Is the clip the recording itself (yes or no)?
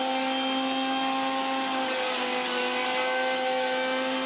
yes